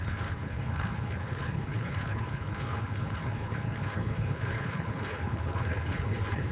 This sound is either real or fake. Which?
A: fake